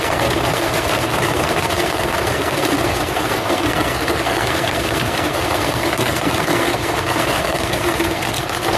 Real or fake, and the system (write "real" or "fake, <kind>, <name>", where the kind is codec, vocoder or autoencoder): fake, codec, SNAC